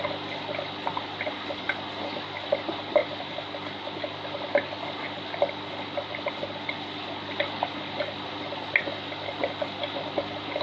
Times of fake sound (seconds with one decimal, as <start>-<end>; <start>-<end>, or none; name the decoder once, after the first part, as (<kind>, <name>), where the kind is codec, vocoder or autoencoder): none

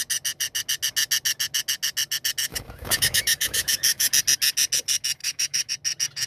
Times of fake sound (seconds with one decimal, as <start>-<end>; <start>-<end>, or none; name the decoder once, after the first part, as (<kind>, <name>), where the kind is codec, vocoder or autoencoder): 2.5-4.1 (autoencoder, DAC-VAE); 5.2-5.7